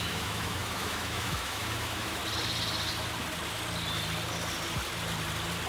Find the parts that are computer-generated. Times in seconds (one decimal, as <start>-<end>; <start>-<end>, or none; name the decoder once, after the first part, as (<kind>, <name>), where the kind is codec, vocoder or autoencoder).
0.0-2.2 (autoencoder, DAC-VAE)